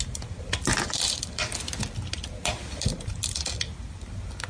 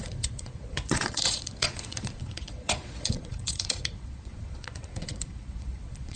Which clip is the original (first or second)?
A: first